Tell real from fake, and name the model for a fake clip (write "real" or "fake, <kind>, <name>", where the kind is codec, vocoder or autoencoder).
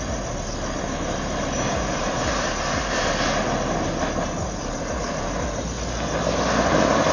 real